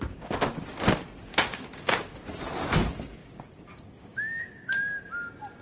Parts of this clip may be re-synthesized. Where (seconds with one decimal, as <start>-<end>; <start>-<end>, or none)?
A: 1.3-2.0; 3.2-5.0